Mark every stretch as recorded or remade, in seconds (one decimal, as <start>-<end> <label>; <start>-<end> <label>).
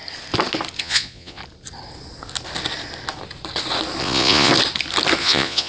0.0-0.8 recorded; 0.8-1.4 remade; 1.4-4.0 recorded; 4.0-4.5 remade; 4.5-5.2 recorded; 5.2-5.7 remade